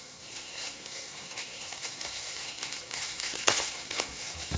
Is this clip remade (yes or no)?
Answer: yes